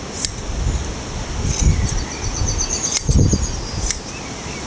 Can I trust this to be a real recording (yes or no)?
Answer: yes